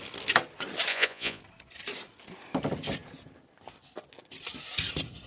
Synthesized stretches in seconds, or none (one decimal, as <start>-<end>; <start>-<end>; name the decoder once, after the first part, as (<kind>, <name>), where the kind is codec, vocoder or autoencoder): 0.9-1.4 (vocoder, Vocos)